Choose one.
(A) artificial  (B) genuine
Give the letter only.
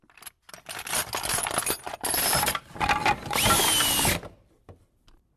A